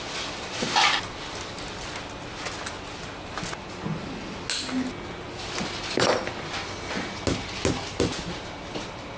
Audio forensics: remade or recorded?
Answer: recorded